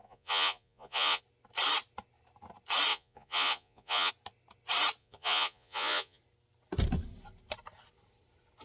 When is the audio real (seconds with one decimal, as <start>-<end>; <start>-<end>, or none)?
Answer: 1.2-2.9; 4.1-5.0; 6.2-8.6